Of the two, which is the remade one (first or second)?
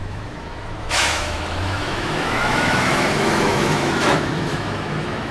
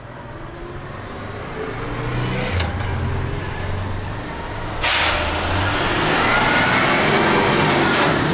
first